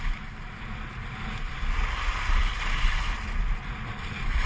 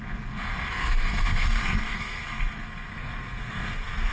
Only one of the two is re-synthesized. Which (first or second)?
second